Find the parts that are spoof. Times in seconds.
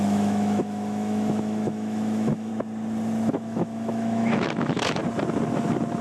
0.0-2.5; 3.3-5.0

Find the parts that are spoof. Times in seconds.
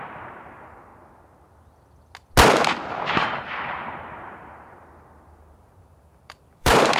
0.0-0.9; 3.1-7.0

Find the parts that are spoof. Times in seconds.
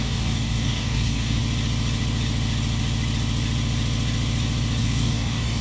0.0-1.4; 4.8-5.6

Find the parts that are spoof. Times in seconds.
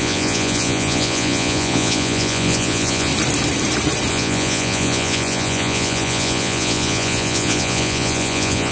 0.0-3.1; 4.1-8.7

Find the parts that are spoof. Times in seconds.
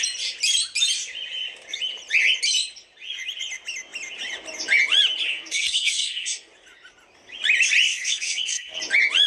5.3-6.5; 7.9-8.8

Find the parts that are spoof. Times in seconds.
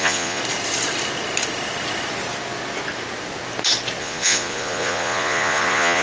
0.0-0.4; 4.0-6.0